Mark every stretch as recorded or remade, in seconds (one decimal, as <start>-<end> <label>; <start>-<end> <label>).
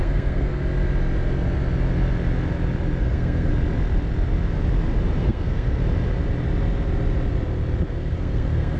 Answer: 0.0-0.6 remade; 0.6-3.0 recorded; 3.0-3.5 remade; 3.5-5.2 recorded; 5.2-5.8 remade; 5.8-7.9 recorded; 7.9-8.8 remade